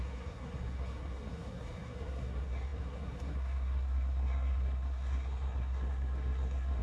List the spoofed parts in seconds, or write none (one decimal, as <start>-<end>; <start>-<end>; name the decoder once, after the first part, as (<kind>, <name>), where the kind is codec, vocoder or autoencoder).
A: 0.0-6.8 (codec, SNAC)